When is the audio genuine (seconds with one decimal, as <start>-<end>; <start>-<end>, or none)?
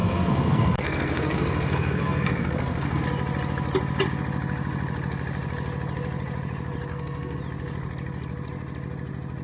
3.0-6.9; 7.4-9.4